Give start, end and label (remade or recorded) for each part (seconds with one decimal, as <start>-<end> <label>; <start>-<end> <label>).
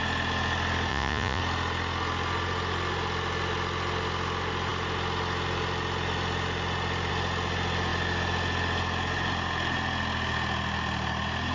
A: 0.0-0.9 recorded; 0.9-1.4 remade; 1.4-11.5 recorded